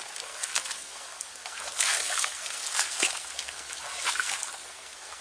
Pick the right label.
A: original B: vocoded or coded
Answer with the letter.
B